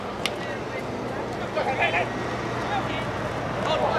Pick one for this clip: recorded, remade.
recorded